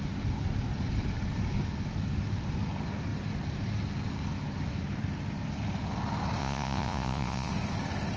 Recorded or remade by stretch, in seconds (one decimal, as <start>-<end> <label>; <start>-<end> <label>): 0.0-6.4 recorded; 6.4-7.5 remade; 7.5-8.2 recorded